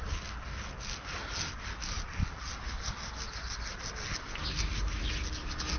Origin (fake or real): real